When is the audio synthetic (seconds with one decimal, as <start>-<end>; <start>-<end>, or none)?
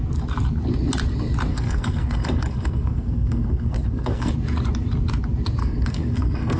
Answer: 1.5-4.3; 5.6-6.6